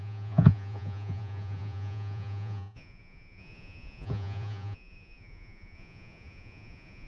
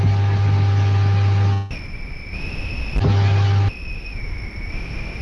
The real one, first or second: second